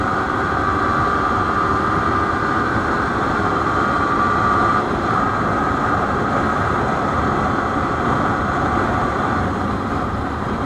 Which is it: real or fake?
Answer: fake